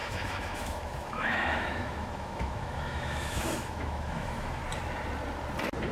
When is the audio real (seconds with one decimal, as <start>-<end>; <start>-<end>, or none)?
4.6-5.9